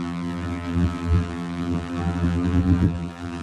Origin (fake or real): fake